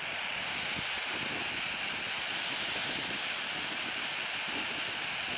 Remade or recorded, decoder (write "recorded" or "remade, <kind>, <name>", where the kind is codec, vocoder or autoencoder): recorded